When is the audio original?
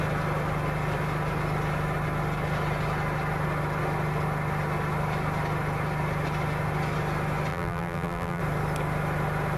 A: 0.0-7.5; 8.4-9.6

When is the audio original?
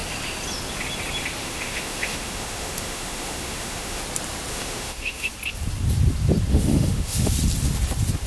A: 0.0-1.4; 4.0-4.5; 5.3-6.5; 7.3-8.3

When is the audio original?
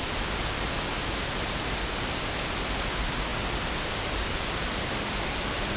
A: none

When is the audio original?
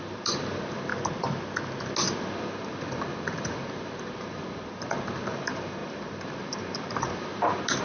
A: 0.9-2.2